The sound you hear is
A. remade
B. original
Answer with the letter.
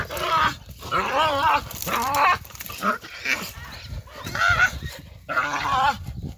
A